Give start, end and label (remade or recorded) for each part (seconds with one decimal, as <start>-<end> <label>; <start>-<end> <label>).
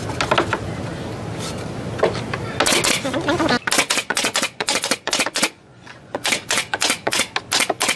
0.0-3.8 recorded; 3.8-7.2 remade; 7.2-8.0 recorded